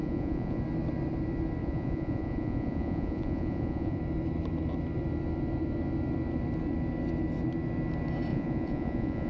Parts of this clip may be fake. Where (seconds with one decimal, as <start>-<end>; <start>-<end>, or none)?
0.0-0.6; 1.6-4.0; 8.3-9.3